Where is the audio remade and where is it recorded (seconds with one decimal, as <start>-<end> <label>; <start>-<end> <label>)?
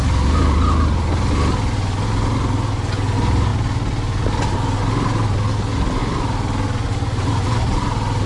0.0-6.9 recorded; 6.9-8.3 remade